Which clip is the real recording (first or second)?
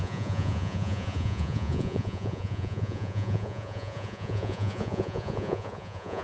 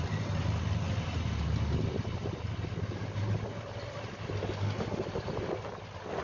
second